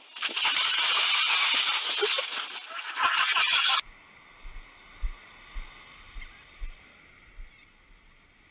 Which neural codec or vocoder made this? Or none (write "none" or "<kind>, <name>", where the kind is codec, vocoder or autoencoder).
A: none